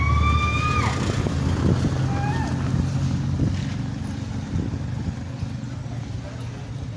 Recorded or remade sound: recorded